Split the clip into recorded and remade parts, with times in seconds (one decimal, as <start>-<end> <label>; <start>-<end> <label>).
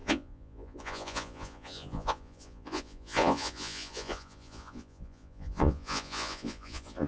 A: 0.0-7.1 remade